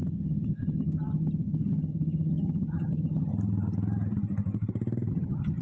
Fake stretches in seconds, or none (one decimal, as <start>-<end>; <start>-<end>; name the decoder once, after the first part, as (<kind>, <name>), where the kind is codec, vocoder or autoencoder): 0.0-3.3 (vocoder, HiFi-GAN); 5.1-5.6